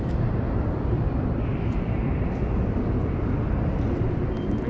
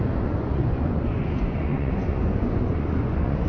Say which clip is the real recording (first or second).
first